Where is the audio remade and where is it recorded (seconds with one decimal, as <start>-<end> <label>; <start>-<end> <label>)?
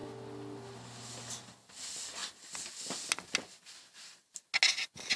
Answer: 0.0-5.2 recorded